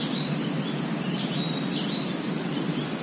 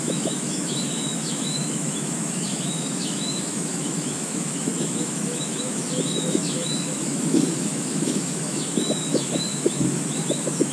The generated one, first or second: second